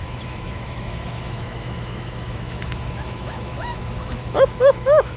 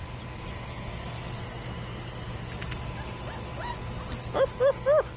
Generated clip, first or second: first